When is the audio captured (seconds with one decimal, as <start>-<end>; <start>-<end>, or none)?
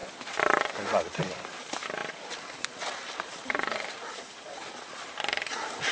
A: 0.0-5.9